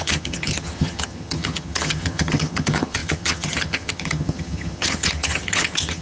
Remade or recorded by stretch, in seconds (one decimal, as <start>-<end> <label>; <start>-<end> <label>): 0.0-6.0 remade

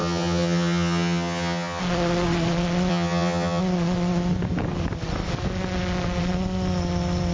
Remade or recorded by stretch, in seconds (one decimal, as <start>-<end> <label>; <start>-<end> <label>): 0.0-1.8 remade; 1.8-2.9 recorded; 2.9-3.6 remade; 3.6-7.3 recorded

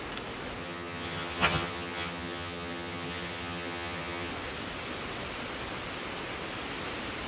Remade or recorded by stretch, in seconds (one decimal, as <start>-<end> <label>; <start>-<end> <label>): 0.0-0.6 recorded; 0.6-4.3 remade; 4.3-7.3 recorded

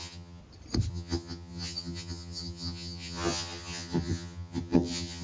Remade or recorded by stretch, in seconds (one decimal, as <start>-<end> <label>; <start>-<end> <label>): 0.0-0.4 remade; 0.4-0.9 recorded; 0.9-5.2 remade

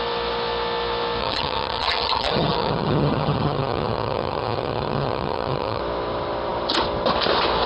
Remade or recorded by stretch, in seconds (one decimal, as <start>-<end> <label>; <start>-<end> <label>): 0.0-1.2 recorded; 1.2-5.8 remade; 5.8-7.7 recorded

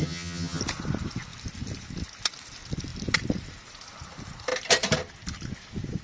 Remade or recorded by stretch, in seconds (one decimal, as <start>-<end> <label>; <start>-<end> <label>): 0.0-0.6 remade; 0.6-6.0 recorded

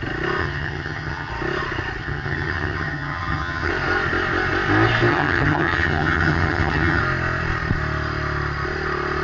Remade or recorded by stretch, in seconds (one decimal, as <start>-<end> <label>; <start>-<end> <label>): 0.0-0.4 recorded; 0.4-1.3 remade; 1.3-2.0 recorded; 2.0-3.7 remade; 3.7-5.1 recorded; 5.1-7.0 remade; 7.0-9.2 recorded

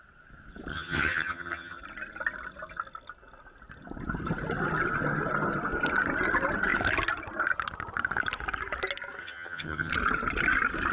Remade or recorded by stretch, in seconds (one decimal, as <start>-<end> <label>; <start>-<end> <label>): 0.0-0.7 recorded; 0.7-1.8 remade; 1.8-9.2 recorded; 9.2-9.9 remade; 9.9-10.9 recorded